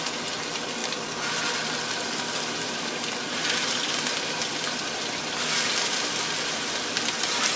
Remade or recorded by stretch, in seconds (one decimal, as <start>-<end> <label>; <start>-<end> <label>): 0.0-7.6 recorded